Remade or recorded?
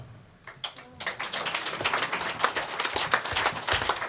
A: recorded